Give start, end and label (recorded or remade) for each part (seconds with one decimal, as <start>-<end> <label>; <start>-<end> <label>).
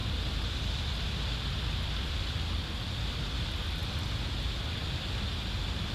0.0-5.9 recorded